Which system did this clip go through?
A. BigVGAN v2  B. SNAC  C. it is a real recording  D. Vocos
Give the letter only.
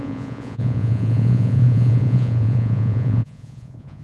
D